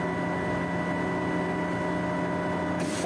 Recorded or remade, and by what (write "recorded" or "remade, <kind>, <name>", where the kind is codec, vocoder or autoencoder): recorded